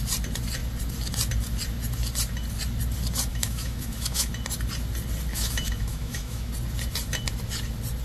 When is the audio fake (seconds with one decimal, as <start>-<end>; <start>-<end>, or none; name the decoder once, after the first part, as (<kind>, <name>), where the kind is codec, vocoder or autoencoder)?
3.3-4.3 (autoencoder, DAC-VAE); 5.3-6.5